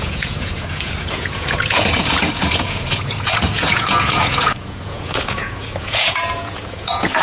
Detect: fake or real fake